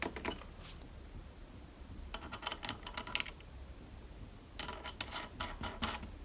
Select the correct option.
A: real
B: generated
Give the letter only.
A